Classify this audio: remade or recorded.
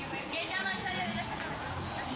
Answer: remade